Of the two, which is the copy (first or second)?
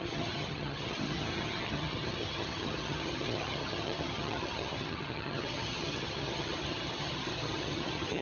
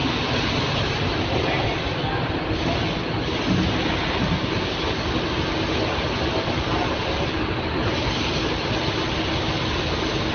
first